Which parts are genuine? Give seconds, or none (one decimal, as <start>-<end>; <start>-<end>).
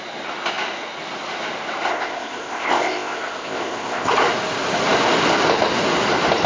0.0-1.9; 4.1-6.5